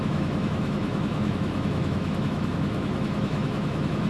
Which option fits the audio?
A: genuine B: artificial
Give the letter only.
B